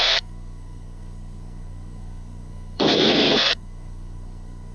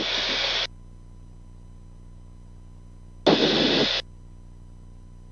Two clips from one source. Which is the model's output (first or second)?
first